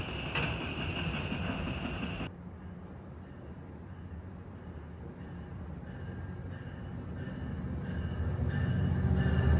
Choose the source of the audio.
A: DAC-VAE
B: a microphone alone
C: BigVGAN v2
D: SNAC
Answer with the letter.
B